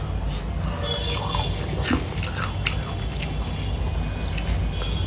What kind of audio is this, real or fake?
real